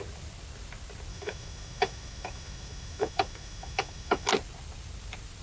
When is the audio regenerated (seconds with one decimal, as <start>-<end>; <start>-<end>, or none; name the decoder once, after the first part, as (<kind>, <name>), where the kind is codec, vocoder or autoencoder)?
1.1-4.3 (autoencoder, DAC-VAE)